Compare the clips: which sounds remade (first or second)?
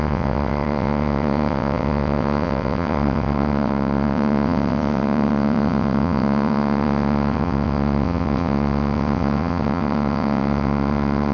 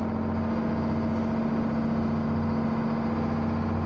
first